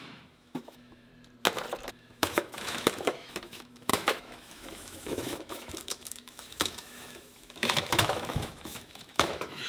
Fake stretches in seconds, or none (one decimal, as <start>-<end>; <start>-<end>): 0.0-1.1; 1.9-9.7